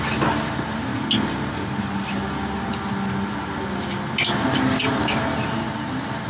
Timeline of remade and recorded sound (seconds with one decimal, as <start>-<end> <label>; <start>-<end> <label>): 0.0-0.9 remade; 0.9-4.7 recorded; 4.7-6.3 remade